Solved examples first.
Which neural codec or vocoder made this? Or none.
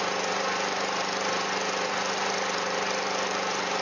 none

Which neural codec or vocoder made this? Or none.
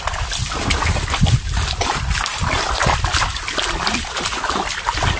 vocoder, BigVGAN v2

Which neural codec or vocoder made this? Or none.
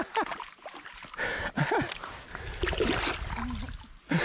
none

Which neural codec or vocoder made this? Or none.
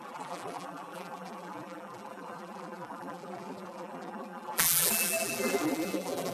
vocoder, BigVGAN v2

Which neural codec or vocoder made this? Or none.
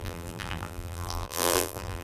vocoder, BigVGAN v2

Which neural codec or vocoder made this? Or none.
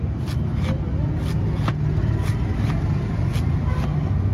none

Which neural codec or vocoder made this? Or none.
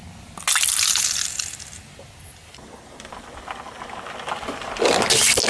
none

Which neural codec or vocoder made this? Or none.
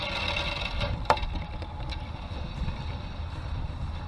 vocoder, BigVGAN v2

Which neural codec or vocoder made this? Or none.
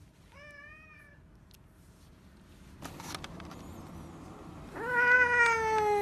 none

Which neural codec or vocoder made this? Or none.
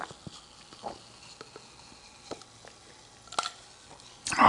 none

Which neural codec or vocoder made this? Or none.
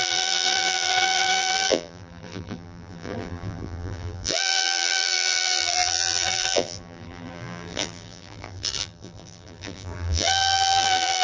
vocoder, BigVGAN v2